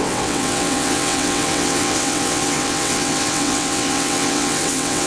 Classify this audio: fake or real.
fake